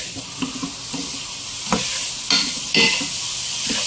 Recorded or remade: recorded